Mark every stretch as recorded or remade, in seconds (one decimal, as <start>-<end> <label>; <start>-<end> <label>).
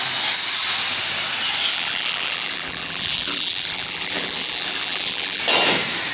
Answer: 0.0-1.7 recorded; 1.7-5.4 remade; 5.4-6.1 recorded